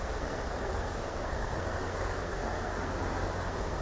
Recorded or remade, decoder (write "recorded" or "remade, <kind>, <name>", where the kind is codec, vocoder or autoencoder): remade, codec, SNAC